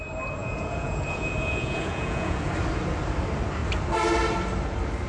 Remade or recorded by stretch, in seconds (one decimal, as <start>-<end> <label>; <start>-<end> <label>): 0.0-0.4 recorded; 0.4-2.5 remade; 2.5-5.1 recorded